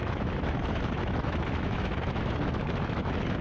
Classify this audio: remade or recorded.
remade